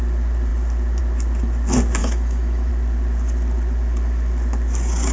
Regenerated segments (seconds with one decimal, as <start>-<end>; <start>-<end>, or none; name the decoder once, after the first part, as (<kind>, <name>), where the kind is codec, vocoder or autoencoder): 2.0-2.7 (autoencoder, DAC-VAE)